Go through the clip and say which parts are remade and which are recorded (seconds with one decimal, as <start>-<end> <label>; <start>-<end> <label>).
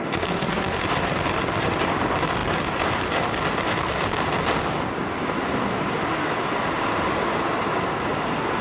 0.0-8.6 recorded